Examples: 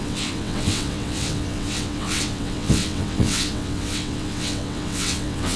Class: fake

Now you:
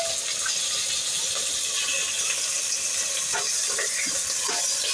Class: real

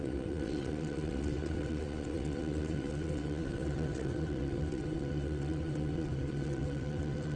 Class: fake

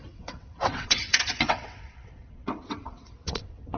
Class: fake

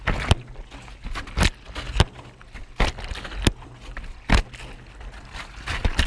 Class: real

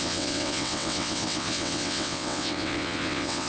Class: fake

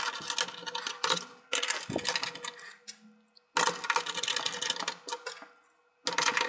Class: real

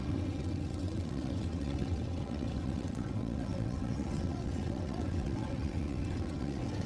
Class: fake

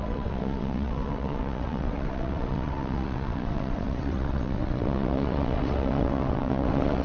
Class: fake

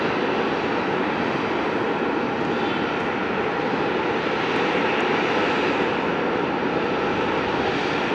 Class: real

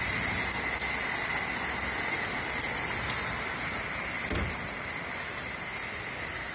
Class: real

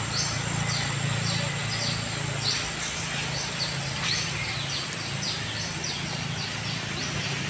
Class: real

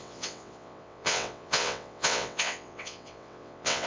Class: fake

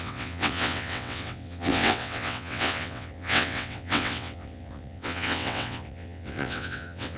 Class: fake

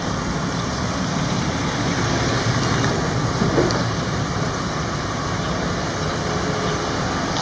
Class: real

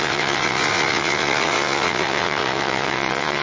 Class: fake